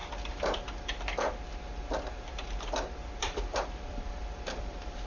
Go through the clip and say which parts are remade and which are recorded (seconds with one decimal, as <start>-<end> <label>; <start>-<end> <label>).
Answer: 0.0-3.1 recorded; 3.1-5.1 remade